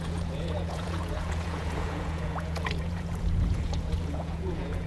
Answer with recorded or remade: remade